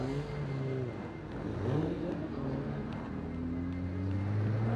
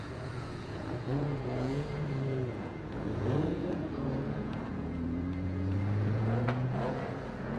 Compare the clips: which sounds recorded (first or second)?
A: first